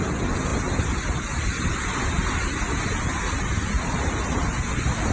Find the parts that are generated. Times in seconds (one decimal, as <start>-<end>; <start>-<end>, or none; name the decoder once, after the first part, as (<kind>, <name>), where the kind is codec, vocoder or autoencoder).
none